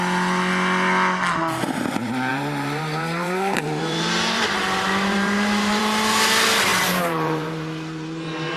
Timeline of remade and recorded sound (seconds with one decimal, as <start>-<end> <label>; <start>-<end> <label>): 0.0-2.3 recorded; 2.3-5.8 remade; 5.8-6.7 recorded; 6.7-8.6 remade

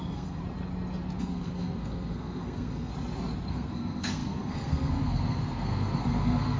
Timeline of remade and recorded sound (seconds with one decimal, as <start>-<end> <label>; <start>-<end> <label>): 0.0-0.4 remade; 0.4-1.2 recorded; 1.2-2.9 remade; 2.9-3.5 recorded; 3.5-6.6 remade

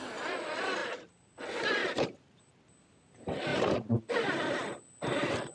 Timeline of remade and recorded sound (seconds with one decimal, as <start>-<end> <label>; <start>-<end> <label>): 0.0-0.8 recorded; 0.8-1.4 remade; 1.4-1.8 recorded; 1.8-2.6 remade; 2.6-3.5 recorded; 3.5-4.1 remade; 4.1-5.5 recorded

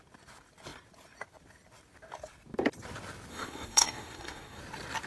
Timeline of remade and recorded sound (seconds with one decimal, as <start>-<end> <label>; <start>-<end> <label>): 0.0-3.3 recorded; 3.3-4.6 remade; 4.6-5.1 recorded